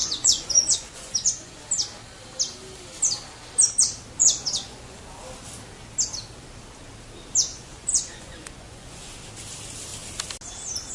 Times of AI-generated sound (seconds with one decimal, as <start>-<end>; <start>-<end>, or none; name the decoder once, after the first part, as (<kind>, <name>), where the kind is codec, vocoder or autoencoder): 0.0-1.6 (vocoder, Vocos); 4.2-5.0; 7.5-9.1